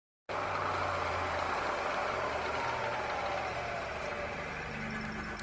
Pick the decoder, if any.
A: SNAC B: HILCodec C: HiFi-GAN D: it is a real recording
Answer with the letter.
D